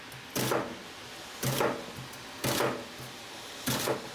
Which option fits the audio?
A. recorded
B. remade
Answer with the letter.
A